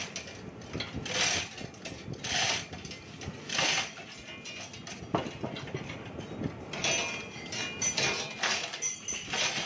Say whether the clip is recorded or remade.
recorded